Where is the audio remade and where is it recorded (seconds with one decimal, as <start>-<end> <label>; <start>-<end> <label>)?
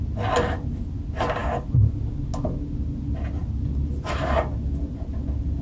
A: 0.0-3.4 recorded; 3.4-4.8 remade; 4.8-5.6 recorded